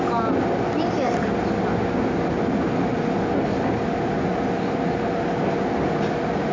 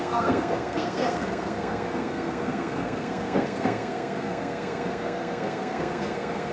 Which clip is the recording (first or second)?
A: first